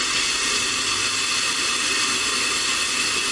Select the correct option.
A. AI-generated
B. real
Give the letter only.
B